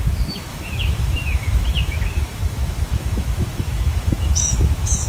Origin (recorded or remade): remade